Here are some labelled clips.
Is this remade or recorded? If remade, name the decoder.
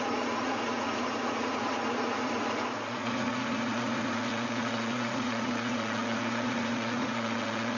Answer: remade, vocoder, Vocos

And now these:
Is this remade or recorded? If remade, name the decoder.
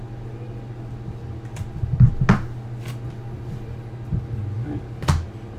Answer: recorded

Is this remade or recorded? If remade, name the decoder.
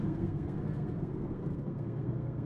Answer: remade, codec, SNAC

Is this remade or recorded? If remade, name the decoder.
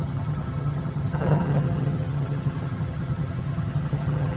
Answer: remade, vocoder, HiFi-GAN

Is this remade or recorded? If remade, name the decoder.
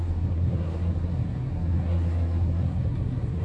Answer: remade, codec, SNAC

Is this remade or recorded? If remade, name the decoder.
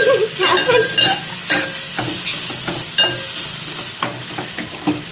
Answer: recorded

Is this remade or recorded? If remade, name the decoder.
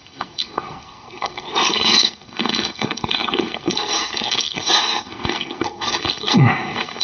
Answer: remade, codec, SNAC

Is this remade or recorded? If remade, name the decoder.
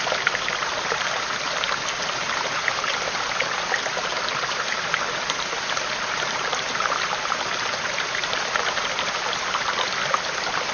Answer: recorded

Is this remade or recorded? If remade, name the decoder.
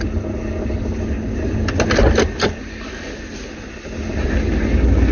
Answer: recorded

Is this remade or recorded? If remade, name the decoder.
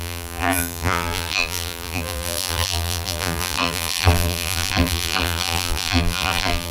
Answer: remade, vocoder, BigVGAN v2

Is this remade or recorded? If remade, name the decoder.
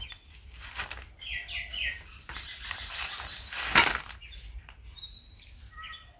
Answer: recorded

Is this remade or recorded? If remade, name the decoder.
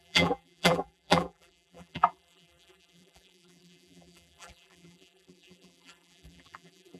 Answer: remade, vocoder, BigVGAN v2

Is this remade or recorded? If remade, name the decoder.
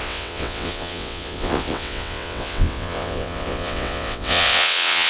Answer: remade, vocoder, WaveNeXt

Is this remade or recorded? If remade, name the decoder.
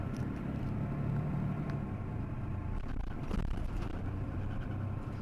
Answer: remade, vocoder, BigVGAN v2